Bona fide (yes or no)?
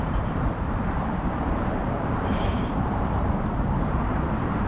no